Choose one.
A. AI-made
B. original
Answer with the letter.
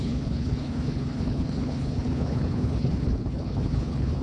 A